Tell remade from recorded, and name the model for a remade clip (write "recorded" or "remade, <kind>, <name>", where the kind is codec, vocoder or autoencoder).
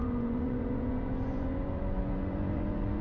remade, vocoder, Vocos